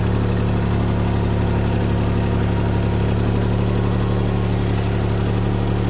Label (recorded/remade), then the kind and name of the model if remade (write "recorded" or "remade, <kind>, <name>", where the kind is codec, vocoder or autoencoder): recorded